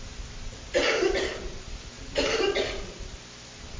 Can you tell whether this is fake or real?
real